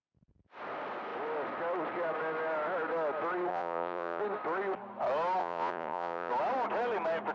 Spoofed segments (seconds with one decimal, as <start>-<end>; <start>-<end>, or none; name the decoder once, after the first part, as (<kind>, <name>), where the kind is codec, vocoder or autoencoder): 3.5-4.2 (vocoder, Vocos); 5.4-6.3